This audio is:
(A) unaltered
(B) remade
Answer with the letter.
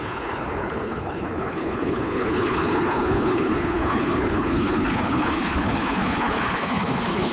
B